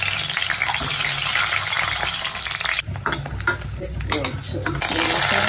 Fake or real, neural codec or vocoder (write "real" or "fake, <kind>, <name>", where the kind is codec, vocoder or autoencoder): real